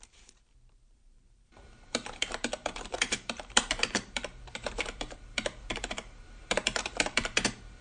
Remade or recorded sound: remade